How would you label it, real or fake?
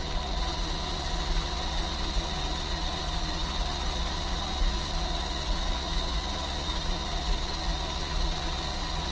fake